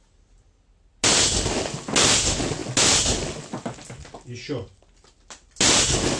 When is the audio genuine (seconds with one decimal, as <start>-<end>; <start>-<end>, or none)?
0.0-6.2